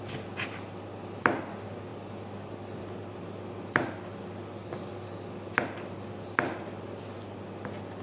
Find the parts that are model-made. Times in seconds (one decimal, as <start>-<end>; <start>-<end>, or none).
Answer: none